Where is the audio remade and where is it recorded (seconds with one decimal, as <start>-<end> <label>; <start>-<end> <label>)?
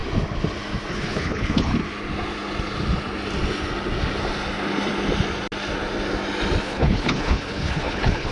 0.0-0.9 recorded; 0.9-1.7 remade; 1.7-6.6 recorded; 6.6-8.3 remade